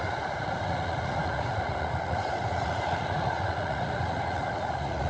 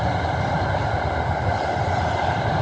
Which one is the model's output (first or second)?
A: first